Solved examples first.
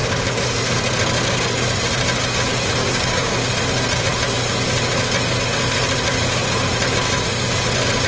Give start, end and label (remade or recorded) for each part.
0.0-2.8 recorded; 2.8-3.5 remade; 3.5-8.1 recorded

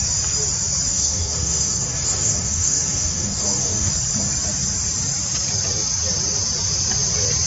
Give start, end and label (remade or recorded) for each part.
0.0-0.9 recorded; 0.9-3.9 remade; 3.9-7.5 recorded

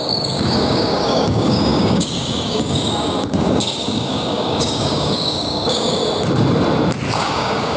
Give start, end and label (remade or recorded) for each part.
0.0-6.0 remade; 6.0-7.1 recorded; 7.1-7.8 remade

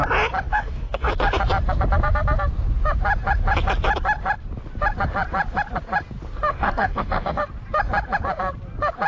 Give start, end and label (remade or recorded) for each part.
0.0-0.5 recorded; 0.5-1.1 remade; 1.1-6.5 recorded; 6.5-7.4 remade; 7.4-9.1 recorded

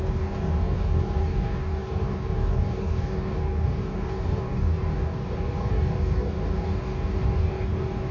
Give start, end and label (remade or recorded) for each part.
0.0-8.1 remade

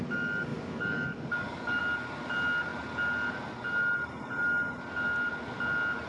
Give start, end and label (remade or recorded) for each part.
0.0-0.5 recorded; 0.5-1.8 remade; 1.8-6.1 recorded

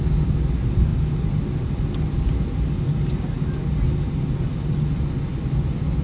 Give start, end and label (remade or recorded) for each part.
0.0-6.0 recorded